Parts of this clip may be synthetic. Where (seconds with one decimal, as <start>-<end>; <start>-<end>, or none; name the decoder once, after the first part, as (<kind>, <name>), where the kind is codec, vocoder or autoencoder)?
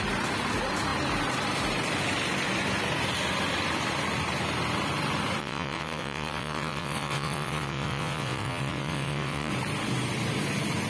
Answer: 5.4-9.5 (vocoder, WaveNeXt)